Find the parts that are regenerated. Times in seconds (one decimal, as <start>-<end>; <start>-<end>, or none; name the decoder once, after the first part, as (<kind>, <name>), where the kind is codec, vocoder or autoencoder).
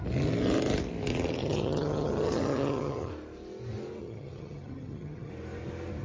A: 1.4-3.1 (vocoder, HiFi-GAN); 4.0-5.3